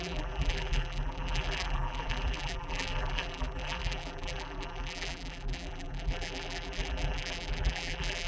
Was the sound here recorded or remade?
remade